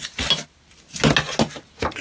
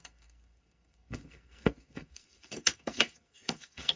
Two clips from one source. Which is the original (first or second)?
first